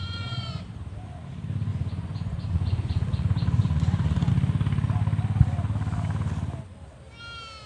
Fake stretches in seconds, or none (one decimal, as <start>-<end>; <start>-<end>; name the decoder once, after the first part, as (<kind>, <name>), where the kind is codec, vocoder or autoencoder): 0.0-0.6 (vocoder, Vocos); 1.7-4.3